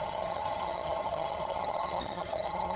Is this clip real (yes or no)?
no